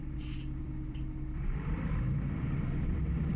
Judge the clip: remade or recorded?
remade